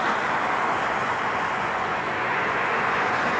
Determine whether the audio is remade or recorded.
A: remade